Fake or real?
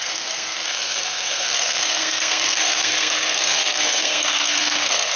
fake